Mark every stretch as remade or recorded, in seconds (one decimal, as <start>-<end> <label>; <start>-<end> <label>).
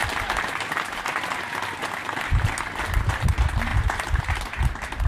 0.0-3.7 recorded; 3.7-4.4 remade; 4.4-5.1 recorded